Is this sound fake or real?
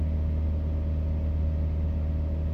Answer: real